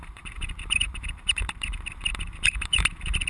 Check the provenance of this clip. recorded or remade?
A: remade